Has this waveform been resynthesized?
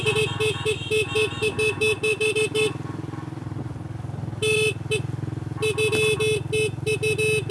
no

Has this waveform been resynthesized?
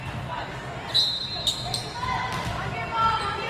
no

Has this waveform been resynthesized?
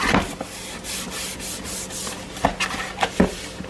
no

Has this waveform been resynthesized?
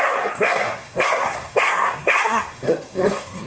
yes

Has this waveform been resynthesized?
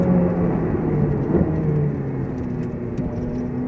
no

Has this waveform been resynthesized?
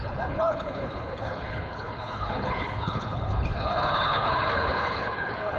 yes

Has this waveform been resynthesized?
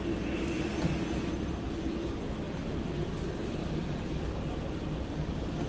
no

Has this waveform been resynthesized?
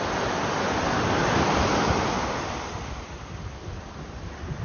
yes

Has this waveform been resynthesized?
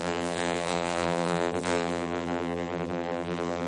yes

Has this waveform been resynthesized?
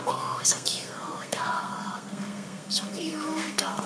yes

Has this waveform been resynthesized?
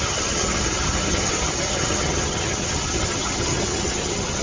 yes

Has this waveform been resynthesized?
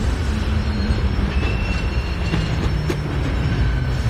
yes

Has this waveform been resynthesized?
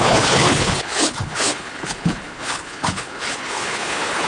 yes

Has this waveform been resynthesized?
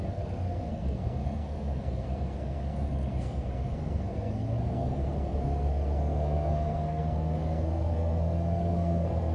yes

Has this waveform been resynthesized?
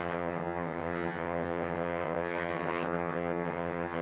yes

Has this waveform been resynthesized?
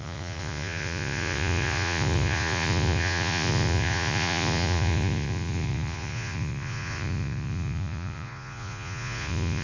yes